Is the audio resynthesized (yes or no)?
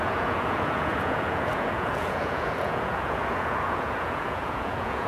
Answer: yes